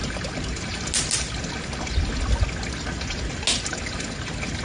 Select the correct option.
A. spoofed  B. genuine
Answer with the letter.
B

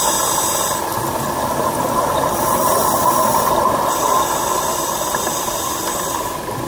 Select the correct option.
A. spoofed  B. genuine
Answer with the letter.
B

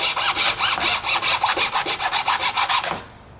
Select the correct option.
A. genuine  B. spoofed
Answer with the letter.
A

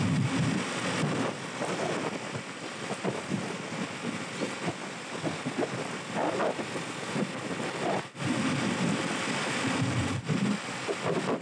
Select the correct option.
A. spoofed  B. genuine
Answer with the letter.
B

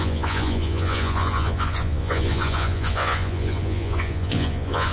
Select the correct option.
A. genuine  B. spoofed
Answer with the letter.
B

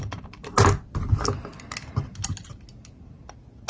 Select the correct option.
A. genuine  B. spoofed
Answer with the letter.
A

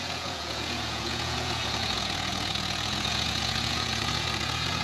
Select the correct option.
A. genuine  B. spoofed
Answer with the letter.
B